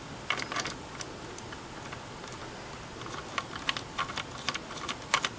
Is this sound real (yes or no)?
yes